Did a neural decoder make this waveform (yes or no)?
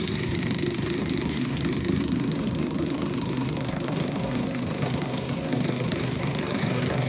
yes